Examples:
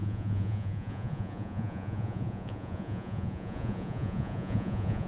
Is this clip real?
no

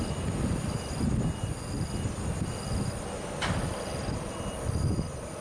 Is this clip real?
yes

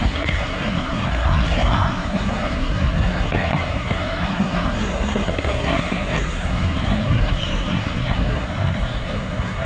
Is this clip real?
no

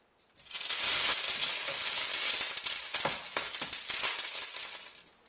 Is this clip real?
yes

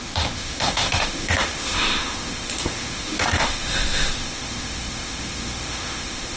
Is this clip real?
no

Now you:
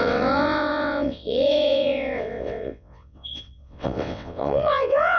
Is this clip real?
no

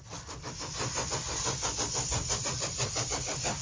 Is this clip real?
yes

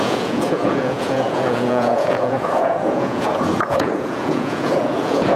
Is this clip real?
no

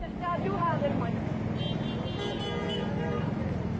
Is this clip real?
yes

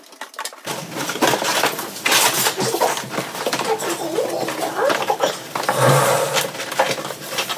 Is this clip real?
yes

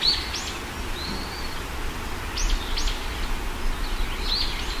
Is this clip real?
yes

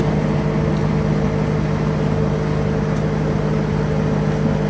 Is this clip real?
yes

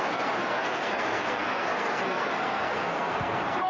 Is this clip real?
no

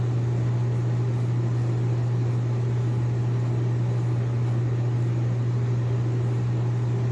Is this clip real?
yes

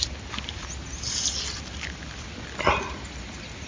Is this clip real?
yes